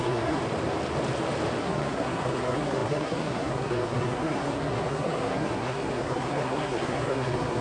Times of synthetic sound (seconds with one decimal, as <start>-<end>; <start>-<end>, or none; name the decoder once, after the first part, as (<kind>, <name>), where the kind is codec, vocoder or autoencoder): 0.0-0.4 (codec, SNAC); 1.6-7.6